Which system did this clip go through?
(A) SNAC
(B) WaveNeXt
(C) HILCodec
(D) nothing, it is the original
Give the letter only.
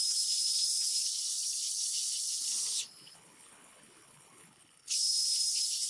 C